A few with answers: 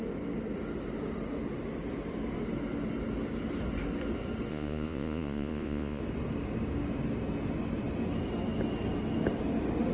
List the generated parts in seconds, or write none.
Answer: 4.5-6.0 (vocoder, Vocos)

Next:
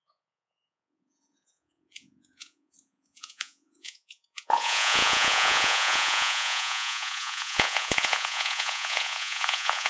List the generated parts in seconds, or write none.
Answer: 0.0-9.9 (vocoder, Vocos)

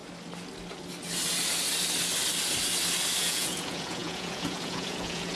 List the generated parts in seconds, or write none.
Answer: 3.2-5.4 (vocoder, Vocos)

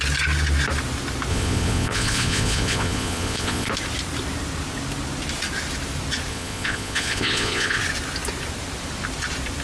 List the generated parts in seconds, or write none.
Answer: 1.3-3.7 (vocoder, Vocos); 6.3-7.8

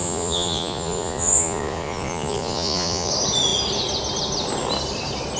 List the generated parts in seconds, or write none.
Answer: 0.0-3.1 (vocoder, Vocos)

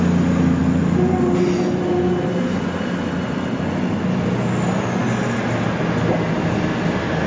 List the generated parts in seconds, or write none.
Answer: none

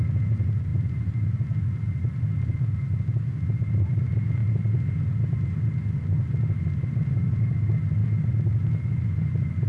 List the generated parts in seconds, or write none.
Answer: none

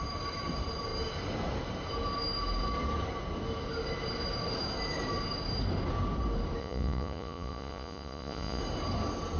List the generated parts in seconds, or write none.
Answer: 6.6-8.6 (vocoder, Vocos)